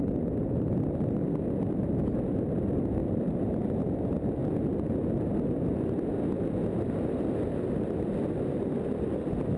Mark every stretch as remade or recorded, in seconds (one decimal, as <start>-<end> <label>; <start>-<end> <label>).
0.0-9.6 remade